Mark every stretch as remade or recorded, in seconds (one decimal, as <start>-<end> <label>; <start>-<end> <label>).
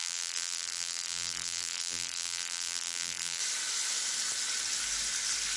0.0-3.4 remade; 3.4-5.6 recorded